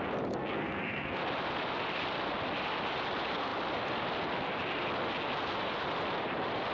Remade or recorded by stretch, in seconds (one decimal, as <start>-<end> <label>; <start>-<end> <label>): 0.0-0.4 recorded; 0.4-1.2 remade; 1.2-6.7 recorded